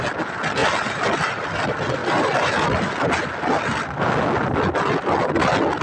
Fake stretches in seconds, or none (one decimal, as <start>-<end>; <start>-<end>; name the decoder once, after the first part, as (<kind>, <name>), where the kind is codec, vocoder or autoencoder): 2.0-2.9 (vocoder, BigVGAN v2)